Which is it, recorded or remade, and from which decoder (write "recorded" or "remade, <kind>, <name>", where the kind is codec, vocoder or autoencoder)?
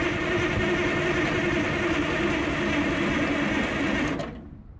recorded